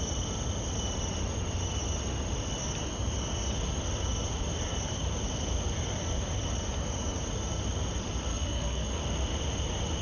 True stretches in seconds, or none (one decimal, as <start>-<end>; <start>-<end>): 0.0-8.3; 9.0-10.0